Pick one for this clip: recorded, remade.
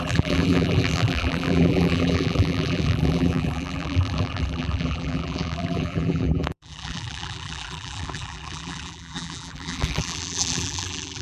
remade